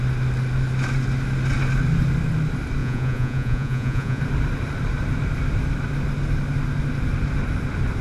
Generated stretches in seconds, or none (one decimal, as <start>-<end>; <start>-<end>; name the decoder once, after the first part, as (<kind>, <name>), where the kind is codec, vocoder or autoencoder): 2.8-4.2 (vocoder, Vocos)